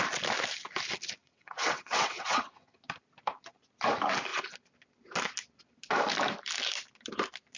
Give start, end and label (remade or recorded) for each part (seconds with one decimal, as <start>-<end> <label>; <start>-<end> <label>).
0.0-1.2 recorded; 1.2-2.7 remade; 2.7-7.6 recorded